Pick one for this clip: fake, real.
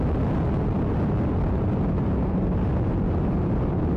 real